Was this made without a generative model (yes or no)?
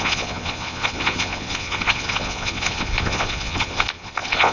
no